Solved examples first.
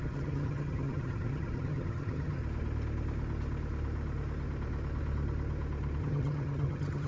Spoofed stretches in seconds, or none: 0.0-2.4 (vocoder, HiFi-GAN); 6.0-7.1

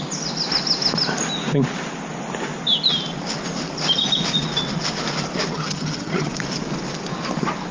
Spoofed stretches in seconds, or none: 5.5-6.3 (vocoder, HiFi-GAN)

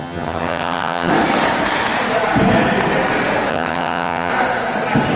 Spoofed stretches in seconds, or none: 0.0-1.1 (vocoder, HiFi-GAN); 3.5-4.3

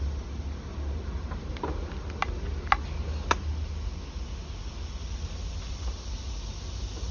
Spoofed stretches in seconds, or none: none

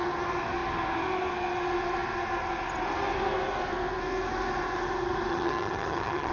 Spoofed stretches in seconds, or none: 5.3-6.3 (vocoder, HiFi-GAN)